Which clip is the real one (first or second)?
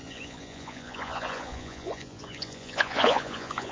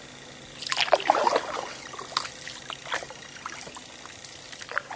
second